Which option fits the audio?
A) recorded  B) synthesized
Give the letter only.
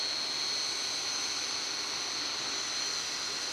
A